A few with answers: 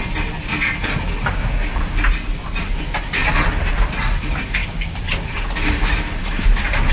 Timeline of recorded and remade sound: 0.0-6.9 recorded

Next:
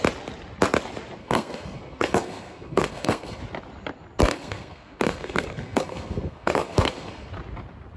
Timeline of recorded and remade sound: 0.0-1.2 recorded; 1.2-3.4 remade; 3.4-4.2 recorded; 4.2-7.3 remade; 7.3-8.0 recorded

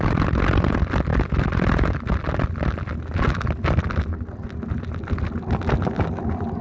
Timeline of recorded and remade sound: 0.0-6.6 recorded

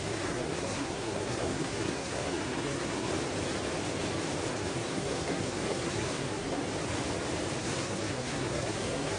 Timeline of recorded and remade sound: 0.0-3.1 remade; 3.1-4.5 recorded; 4.5-6.6 remade; 6.6-7.6 recorded; 7.6-9.2 remade